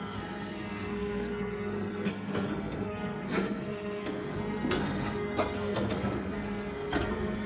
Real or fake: fake